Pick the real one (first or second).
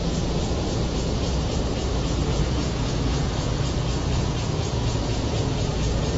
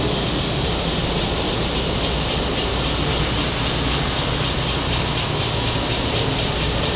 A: second